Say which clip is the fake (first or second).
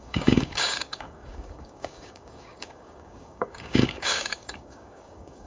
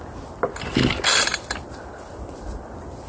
first